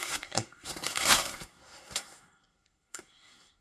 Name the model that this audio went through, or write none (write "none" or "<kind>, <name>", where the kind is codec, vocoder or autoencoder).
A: codec, SNAC